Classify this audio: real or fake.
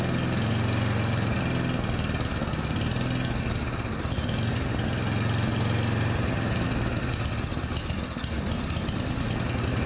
real